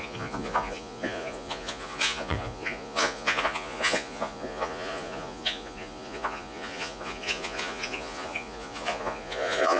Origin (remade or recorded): remade